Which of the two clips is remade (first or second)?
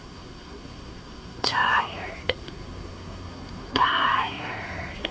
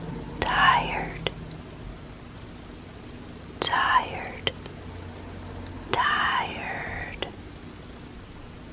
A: first